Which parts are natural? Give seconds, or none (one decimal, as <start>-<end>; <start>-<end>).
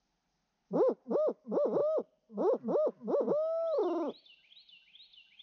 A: 0.0-5.4